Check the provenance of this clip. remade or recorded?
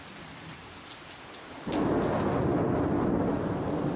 recorded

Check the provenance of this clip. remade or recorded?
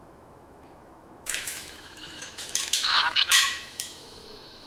remade